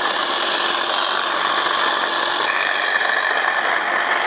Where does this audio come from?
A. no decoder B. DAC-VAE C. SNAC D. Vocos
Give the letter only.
A